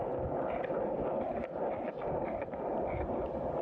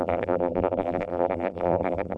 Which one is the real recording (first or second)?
first